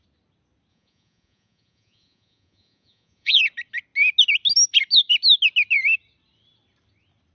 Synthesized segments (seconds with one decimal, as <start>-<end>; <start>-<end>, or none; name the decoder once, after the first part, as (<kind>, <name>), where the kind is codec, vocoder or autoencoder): 0.7-3.4 (vocoder, Vocos)